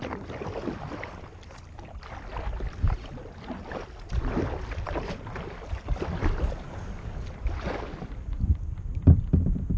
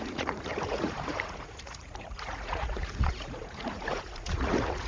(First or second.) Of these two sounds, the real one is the first